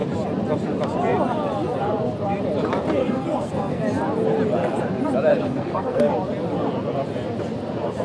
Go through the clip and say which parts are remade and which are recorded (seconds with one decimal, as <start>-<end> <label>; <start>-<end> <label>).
0.0-3.0 recorded; 3.0-3.8 remade; 3.8-5.3 recorded; 5.3-6.1 remade; 6.1-8.0 recorded